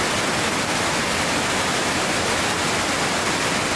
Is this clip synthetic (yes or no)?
no